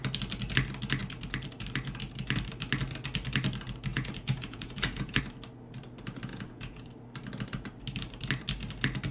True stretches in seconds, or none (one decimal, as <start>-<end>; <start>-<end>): 0.0-3.9; 5.2-6.3; 6.9-9.1